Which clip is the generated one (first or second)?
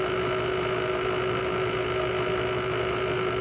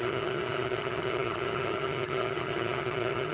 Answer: second